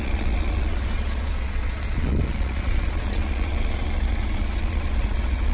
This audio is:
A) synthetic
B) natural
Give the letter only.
A